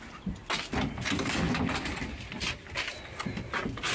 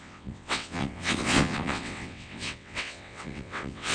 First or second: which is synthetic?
second